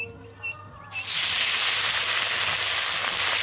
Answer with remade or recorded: recorded